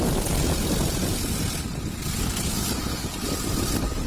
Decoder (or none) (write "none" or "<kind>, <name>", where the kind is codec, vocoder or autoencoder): none